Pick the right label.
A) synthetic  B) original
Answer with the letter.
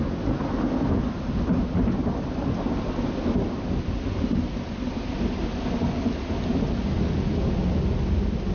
B